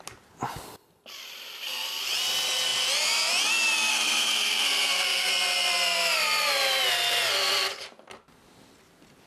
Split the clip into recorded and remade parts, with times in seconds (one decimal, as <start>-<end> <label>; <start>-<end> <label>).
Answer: 0.0-3.9 recorded; 3.9-5.3 remade; 5.3-9.3 recorded